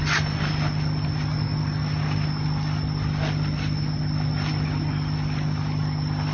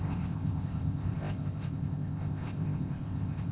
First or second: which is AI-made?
second